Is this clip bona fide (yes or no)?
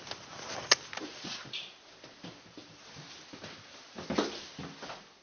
yes